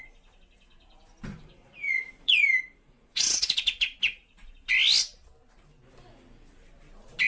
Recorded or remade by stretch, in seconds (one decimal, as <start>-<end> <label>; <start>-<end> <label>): 0.0-1.3 recorded; 1.3-4.5 remade; 4.5-7.3 recorded